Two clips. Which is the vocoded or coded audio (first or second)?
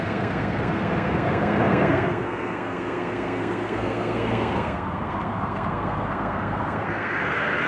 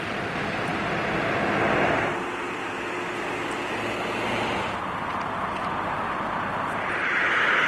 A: first